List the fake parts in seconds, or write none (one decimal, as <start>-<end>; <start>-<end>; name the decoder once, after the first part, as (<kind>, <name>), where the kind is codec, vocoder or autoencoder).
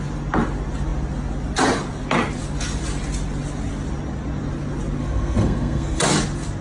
5.0-6.0 (codec, SNAC)